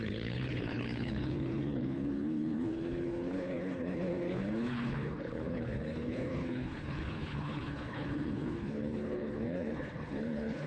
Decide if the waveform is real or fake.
fake